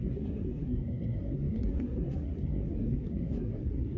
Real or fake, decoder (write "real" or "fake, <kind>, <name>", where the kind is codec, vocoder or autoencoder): fake, codec, SNAC